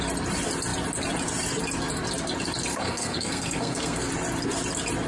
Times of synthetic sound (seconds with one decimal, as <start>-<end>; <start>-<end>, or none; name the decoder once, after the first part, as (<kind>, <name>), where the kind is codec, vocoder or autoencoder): 2.7-4.1 (codec, SNAC)